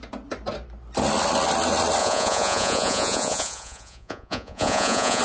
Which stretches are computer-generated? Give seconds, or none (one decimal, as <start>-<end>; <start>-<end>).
2.0-5.2